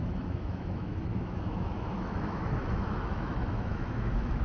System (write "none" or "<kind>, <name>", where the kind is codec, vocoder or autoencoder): autoencoder, DAC-VAE